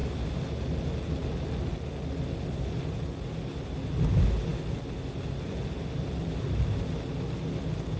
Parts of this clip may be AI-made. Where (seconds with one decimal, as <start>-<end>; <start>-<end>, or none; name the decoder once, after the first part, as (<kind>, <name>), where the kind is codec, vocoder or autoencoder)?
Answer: none